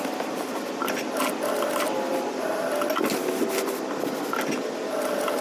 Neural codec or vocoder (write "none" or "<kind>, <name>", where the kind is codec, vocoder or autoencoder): none